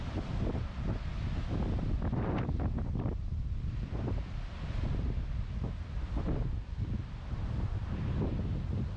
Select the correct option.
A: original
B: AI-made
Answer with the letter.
A